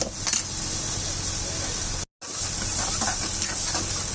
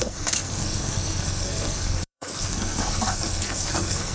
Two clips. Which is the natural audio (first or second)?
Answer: first